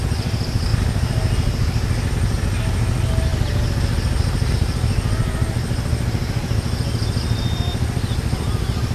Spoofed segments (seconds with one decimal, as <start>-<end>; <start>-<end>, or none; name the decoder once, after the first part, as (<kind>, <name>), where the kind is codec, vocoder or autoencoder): none